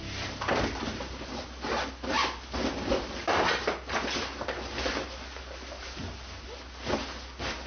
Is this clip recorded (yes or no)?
yes